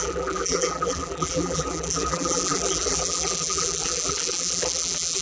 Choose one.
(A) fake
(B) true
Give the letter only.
A